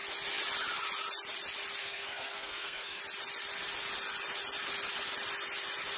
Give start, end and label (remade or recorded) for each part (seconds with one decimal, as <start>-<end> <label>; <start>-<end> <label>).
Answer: 0.0-1.8 recorded; 1.8-3.0 remade; 3.0-6.0 recorded